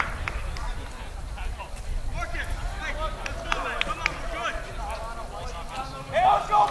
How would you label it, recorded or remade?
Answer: recorded